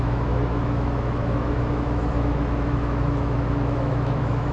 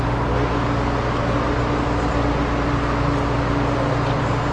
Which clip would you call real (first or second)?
second